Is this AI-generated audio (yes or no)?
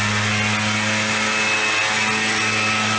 no